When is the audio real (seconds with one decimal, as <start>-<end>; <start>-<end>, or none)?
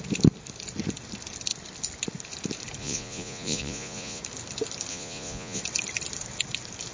0.0-2.8; 4.2-4.9; 5.6-6.9